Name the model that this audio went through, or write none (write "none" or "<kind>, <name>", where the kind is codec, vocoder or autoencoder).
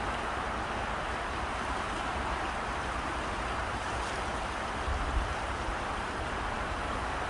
vocoder, BigVGAN v2